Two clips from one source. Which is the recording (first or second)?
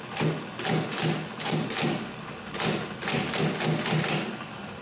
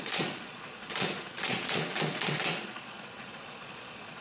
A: first